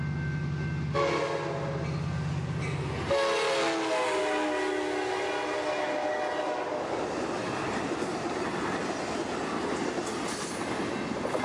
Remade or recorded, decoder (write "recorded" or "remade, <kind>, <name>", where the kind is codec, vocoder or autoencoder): recorded